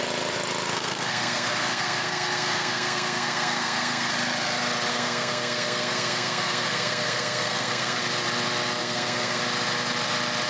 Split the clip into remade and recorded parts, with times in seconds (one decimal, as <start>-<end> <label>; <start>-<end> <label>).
0.0-0.7 recorded; 0.7-4.1 remade; 4.1-4.9 recorded; 4.9-8.0 remade; 8.0-8.8 recorded; 8.8-9.4 remade; 9.4-10.5 recorded